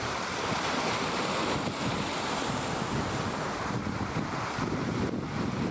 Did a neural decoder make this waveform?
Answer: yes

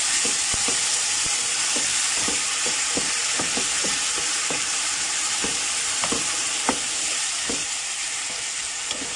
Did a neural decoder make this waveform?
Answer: yes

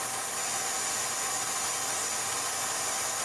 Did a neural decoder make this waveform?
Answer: no